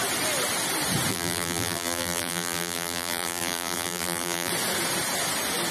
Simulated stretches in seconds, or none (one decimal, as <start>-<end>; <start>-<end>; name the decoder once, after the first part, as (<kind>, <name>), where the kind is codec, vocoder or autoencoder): 1.1-4.5 (vocoder, BigVGAN v2)